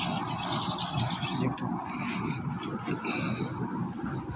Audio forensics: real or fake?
real